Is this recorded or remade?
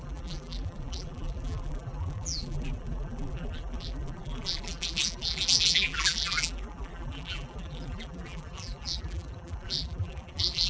remade